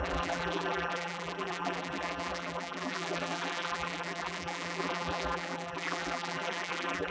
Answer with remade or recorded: remade